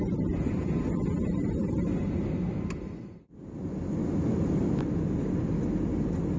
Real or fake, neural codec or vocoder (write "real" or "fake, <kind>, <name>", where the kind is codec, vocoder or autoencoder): real